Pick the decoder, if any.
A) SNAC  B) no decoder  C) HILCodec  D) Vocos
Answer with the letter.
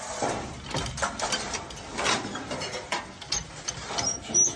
B